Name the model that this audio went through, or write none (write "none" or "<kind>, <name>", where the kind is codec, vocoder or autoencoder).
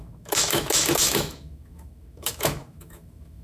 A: autoencoder, DAC-VAE